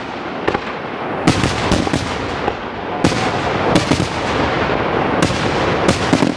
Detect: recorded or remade recorded